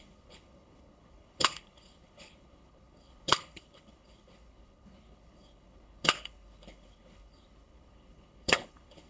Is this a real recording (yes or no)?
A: no